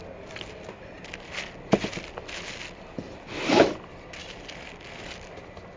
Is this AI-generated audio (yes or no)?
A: no